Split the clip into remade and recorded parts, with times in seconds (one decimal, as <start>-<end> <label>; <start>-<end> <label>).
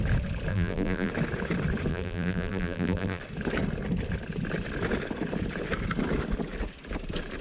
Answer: 0.0-0.5 recorded; 0.5-1.1 remade; 1.1-1.9 recorded; 1.9-3.2 remade; 3.2-7.4 recorded